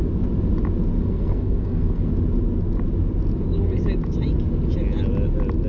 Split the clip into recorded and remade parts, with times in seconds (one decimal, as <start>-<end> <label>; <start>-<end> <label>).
0.0-1.0 recorded; 1.0-2.1 remade; 2.1-5.7 recorded